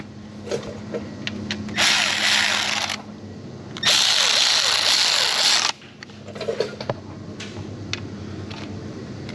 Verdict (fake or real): real